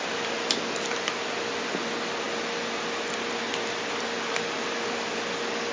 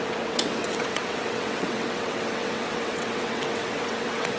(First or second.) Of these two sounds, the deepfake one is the second